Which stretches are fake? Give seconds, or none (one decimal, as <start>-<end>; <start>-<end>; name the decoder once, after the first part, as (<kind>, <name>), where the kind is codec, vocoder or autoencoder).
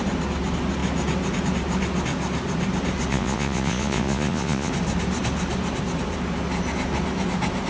3.1-4.7 (vocoder, Vocos)